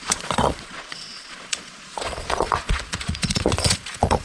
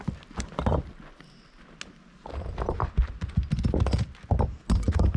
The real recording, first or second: second